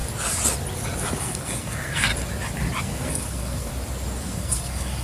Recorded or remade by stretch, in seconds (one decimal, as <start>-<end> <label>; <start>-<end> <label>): 0.0-1.2 recorded; 1.2-2.1 remade; 2.1-2.8 recorded; 2.8-3.7 remade; 3.7-4.2 recorded; 4.2-5.0 remade